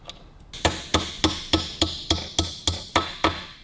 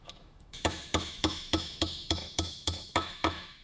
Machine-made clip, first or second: second